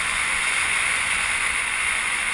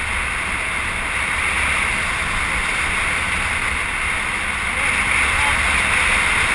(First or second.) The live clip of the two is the second